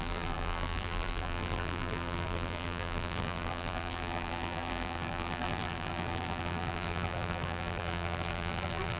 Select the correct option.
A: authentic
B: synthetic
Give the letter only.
B